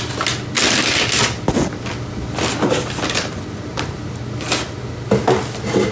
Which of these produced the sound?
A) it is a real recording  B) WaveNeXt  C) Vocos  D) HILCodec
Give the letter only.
A